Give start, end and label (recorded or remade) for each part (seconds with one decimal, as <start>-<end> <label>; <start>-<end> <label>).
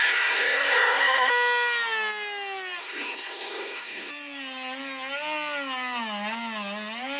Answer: 0.0-1.3 remade; 1.3-2.8 recorded; 2.8-4.1 remade; 4.1-7.2 recorded